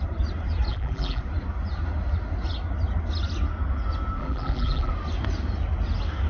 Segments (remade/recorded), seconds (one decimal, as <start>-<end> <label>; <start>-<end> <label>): 0.0-0.7 recorded; 0.7-1.2 remade; 1.2-4.2 recorded; 4.2-4.9 remade; 4.9-6.3 recorded